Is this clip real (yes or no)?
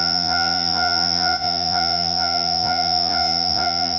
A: no